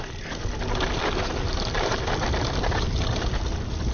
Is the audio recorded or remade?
recorded